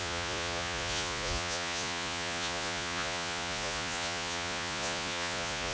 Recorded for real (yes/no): no